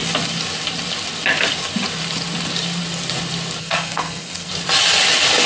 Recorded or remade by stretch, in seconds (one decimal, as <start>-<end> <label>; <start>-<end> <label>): 0.0-3.6 recorded; 3.6-4.5 remade; 4.5-5.5 recorded